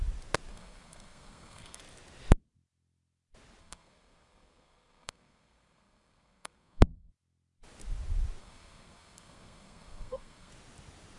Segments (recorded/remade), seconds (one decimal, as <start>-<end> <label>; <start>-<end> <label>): 0.0-0.5 recorded; 0.5-1.8 remade; 1.8-3.6 recorded; 3.6-7.1 remade; 7.1-8.4 recorded; 8.4-10.5 remade; 10.5-11.2 recorded